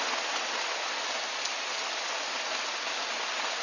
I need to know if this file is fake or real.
real